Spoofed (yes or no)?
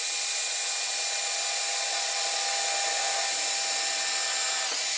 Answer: no